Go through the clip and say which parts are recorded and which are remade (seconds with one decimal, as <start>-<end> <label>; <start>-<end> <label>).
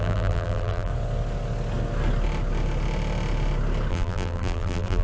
0.0-0.9 remade; 0.9-3.9 recorded; 3.9-5.0 remade